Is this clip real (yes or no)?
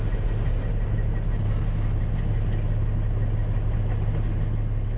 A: yes